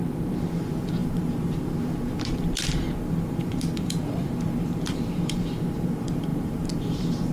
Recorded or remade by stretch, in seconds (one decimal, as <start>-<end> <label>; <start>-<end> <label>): 0.0-7.3 remade